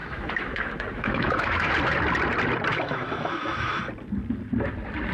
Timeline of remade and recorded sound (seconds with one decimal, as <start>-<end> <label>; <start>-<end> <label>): 0.0-1.7 remade; 1.7-2.7 recorded; 2.7-3.8 remade; 3.8-5.1 recorded